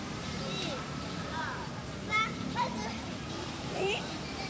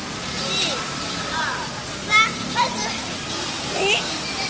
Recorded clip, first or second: second